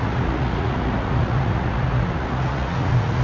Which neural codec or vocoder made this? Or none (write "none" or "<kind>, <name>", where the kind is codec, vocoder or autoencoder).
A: vocoder, Vocos